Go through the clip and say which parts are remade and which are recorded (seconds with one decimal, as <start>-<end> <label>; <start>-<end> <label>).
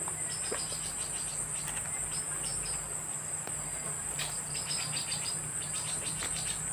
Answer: 0.0-2.5 recorded; 2.5-6.1 remade; 6.1-6.7 recorded